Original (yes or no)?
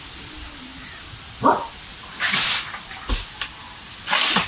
yes